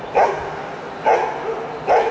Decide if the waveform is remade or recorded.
recorded